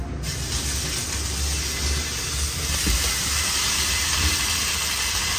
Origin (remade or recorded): recorded